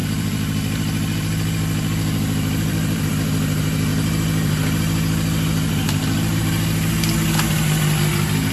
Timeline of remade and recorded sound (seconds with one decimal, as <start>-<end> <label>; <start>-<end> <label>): 0.0-3.1 remade; 3.1-8.5 recorded